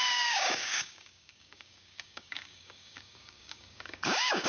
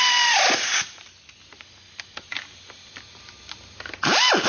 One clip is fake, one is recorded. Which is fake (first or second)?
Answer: first